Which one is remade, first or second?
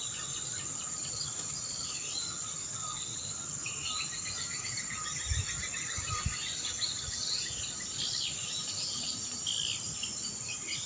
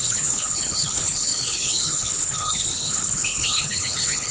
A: second